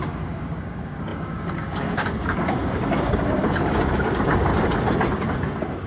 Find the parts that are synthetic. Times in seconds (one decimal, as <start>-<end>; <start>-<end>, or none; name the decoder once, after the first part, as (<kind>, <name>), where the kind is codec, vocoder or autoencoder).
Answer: 0.0-4.5 (codec, DAC); 5.1-5.9